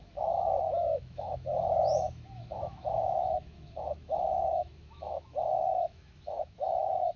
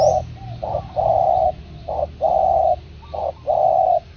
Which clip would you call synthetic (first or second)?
first